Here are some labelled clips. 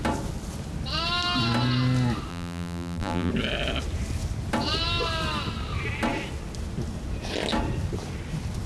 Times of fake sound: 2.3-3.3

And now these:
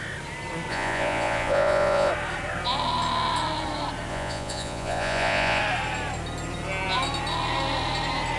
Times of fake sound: 0.7-2.1; 4.1-5.6

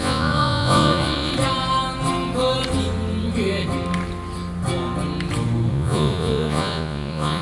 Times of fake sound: 0.0-1.3; 5.7-7.4

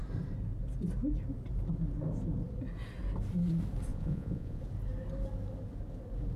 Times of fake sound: 3.9-4.6

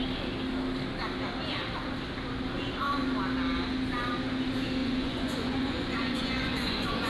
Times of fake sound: 4.8-7.1

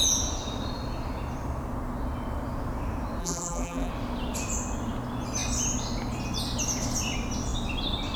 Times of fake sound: 3.2-3.9